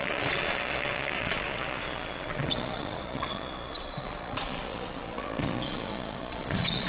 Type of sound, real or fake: fake